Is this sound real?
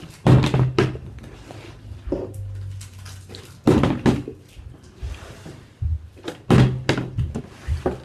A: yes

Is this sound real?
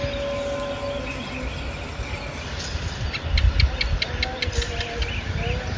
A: yes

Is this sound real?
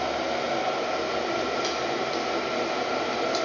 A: yes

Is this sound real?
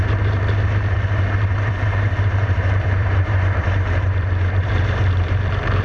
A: no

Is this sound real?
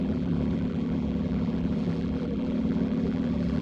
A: no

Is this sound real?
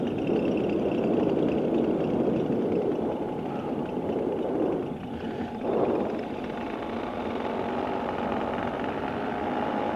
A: no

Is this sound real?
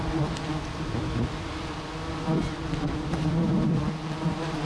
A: no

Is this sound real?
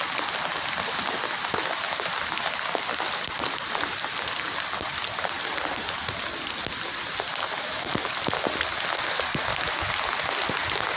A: yes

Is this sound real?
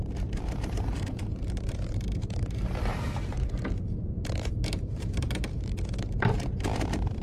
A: no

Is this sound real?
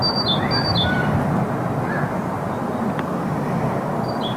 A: yes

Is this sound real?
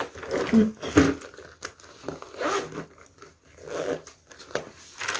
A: yes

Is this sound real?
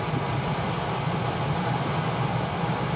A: no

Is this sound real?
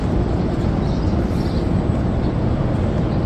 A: yes